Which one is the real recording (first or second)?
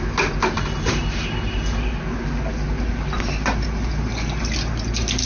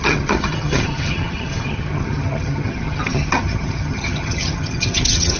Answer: first